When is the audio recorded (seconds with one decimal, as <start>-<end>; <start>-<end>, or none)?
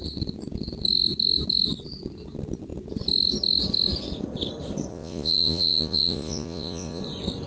0.0-4.9; 7.0-7.5